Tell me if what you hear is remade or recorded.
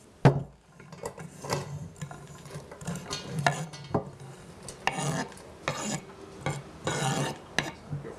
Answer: recorded